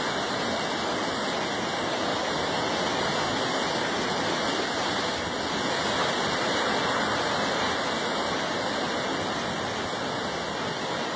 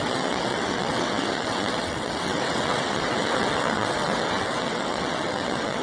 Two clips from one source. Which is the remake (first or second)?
second